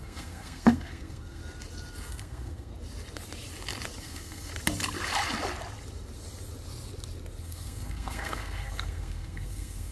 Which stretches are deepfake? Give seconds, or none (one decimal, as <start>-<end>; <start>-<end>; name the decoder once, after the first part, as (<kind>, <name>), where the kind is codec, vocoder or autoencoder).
0.0-1.4 (codec, SNAC); 2.1-2.7; 4.0-4.5; 7.4-9.9